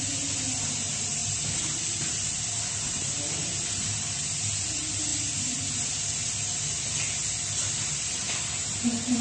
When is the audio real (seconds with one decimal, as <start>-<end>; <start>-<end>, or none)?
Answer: 0.0-9.2